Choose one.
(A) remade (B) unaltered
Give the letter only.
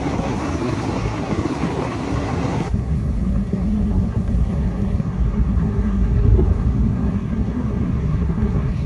A